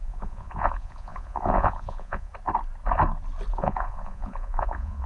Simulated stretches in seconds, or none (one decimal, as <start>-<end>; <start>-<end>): 0.0-2.3; 3.5-5.1